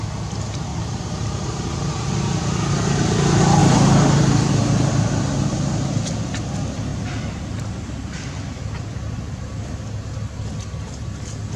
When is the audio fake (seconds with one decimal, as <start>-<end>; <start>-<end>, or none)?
0.7-1.9; 3.6-4.5; 6.9-9.6

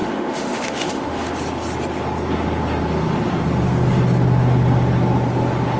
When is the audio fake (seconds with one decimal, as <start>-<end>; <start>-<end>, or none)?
0.0-1.3

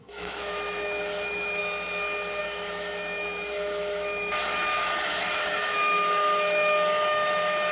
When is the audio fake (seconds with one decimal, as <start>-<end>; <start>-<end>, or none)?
0.0-1.6; 2.4-7.7

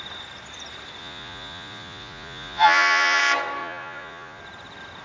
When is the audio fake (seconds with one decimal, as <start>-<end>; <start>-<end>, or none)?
1.0-3.2; 3.6-4.4

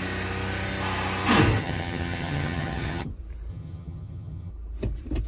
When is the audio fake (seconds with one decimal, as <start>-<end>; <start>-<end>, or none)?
1.6-3.1; 3.5-4.5

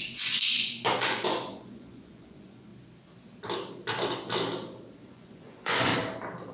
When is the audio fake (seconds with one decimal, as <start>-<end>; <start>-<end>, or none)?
0.0-2.7; 5.1-5.9

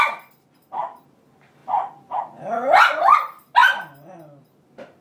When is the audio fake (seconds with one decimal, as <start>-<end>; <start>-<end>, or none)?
1.6-2.2; 3.6-4.4

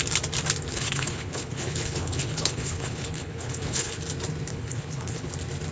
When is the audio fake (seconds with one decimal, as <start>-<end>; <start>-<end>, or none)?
0.7-4.0; 4.5-5.3